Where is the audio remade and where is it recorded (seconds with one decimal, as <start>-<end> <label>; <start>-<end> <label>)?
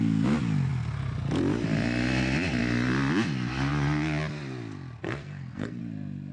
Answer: 0.0-5.0 recorded; 5.0-5.8 remade; 5.8-6.3 recorded